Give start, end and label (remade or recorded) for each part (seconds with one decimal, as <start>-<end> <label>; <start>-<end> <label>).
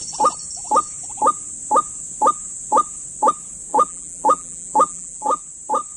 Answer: 0.0-3.7 recorded; 3.7-5.4 remade; 5.4-6.0 recorded